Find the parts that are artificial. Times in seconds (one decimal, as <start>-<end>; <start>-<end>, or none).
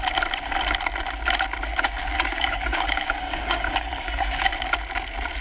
1.7-4.5